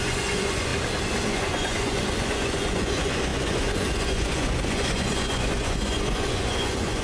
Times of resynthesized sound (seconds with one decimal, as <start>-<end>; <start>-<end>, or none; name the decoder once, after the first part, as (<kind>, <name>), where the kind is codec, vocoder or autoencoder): 0.0-0.7 (vocoder, Vocos); 1.3-7.0